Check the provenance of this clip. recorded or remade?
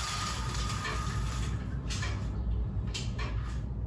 recorded